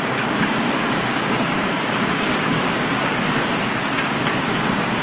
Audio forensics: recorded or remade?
remade